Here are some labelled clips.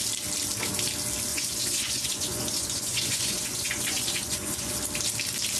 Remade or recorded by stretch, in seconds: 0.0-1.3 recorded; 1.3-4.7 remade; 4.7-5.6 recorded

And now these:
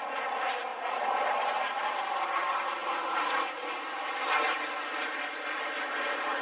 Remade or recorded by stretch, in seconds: 0.0-6.4 recorded

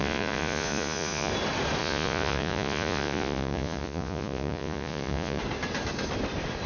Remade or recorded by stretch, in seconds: 0.0-1.3 remade; 1.3-1.8 recorded; 1.8-5.4 remade; 5.4-6.7 recorded

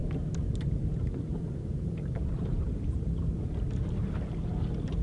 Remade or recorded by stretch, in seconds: 0.0-3.0 remade; 3.0-5.0 recorded

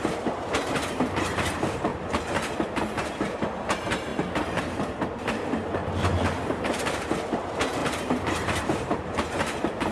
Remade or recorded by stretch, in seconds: 0.0-1.9 remade; 1.9-3.1 recorded; 3.1-4.1 remade; 4.1-4.6 recorded; 4.6-5.8 remade; 5.8-6.6 recorded; 6.6-9.9 remade

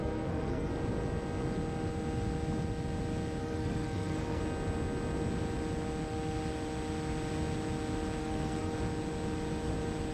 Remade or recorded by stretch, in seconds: 0.0-0.7 remade; 0.7-3.4 recorded; 3.4-4.4 remade; 4.4-8.2 recorded; 8.2-8.7 remade; 8.7-10.1 recorded